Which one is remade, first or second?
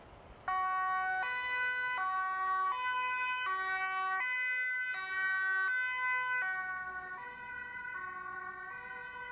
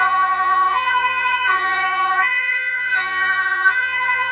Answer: second